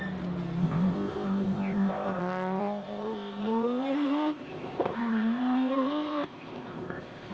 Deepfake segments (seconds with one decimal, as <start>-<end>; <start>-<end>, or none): 0.6-2.2; 2.6-7.3